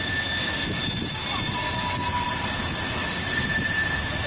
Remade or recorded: recorded